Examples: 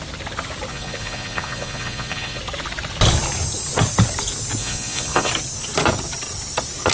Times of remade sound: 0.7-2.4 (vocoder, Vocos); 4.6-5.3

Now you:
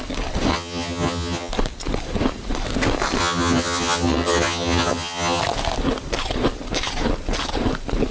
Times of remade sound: 0.5-1.5 (vocoder, HiFi-GAN); 3.2-5.4